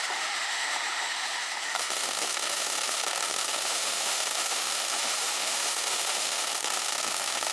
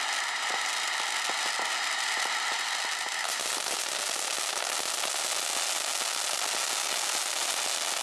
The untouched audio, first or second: second